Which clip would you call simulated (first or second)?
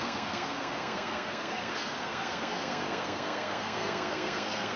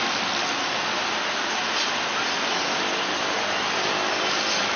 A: first